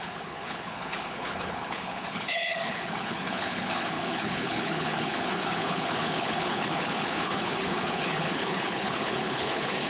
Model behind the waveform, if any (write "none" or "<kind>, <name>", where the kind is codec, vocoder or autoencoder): codec, HILCodec